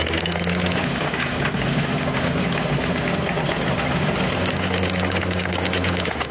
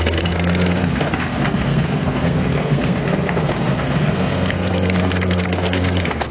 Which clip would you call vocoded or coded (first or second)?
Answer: second